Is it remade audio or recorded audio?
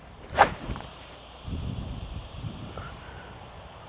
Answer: remade